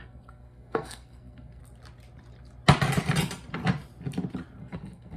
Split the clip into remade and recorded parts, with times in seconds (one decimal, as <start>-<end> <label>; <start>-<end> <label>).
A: 0.0-1.6 remade; 1.6-4.6 recorded; 4.6-5.2 remade